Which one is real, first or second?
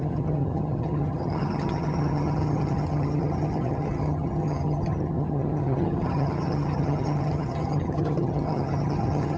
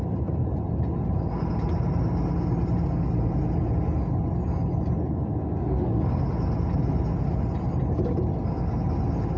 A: second